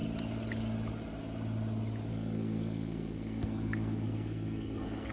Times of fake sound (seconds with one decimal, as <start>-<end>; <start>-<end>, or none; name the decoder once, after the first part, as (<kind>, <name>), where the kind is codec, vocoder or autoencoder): 2.1-5.1 (codec, SNAC)